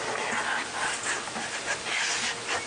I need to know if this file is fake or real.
real